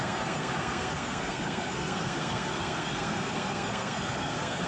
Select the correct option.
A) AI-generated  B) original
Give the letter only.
A